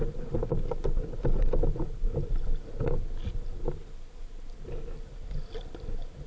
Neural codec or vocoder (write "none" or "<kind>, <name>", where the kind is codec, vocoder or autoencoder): none